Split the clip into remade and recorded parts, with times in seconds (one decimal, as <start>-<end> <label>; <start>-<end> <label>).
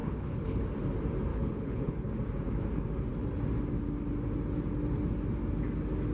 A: 0.0-0.6 remade; 0.6-1.3 recorded; 1.3-2.1 remade; 2.1-6.1 recorded